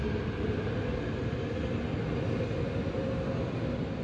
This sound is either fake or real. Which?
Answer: real